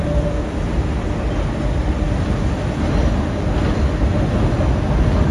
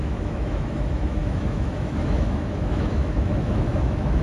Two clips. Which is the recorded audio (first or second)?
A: first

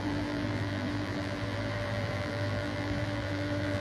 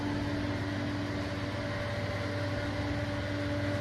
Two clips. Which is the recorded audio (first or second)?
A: second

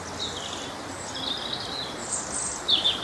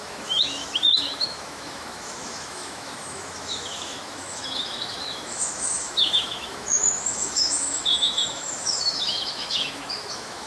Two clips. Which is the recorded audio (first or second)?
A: first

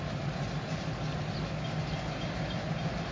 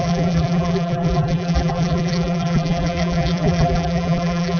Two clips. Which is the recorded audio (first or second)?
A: first